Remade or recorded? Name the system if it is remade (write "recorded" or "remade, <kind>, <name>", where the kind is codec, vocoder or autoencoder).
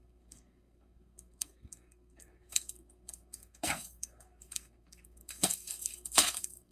remade, codec, SNAC